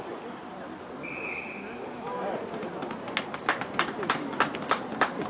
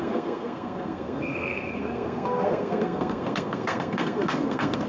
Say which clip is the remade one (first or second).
second